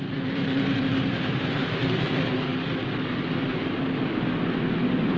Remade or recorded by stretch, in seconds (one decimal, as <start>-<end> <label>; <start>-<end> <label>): 0.0-1.8 remade; 1.8-5.2 recorded